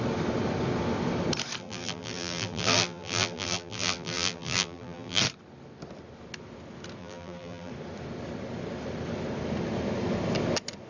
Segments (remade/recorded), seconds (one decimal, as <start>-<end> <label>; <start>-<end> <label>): 0.0-1.6 recorded; 1.6-5.2 remade; 5.2-7.0 recorded; 7.0-7.7 remade; 7.7-10.9 recorded